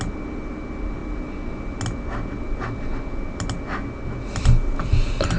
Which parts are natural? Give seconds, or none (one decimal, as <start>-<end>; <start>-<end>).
0.0-5.4